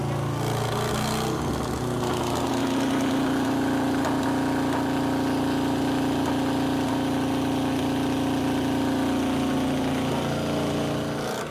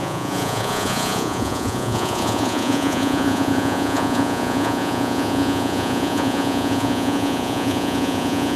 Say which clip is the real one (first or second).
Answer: first